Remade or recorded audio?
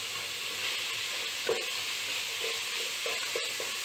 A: recorded